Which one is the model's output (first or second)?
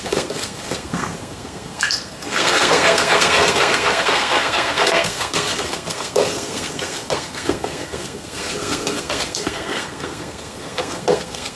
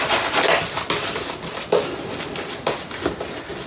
first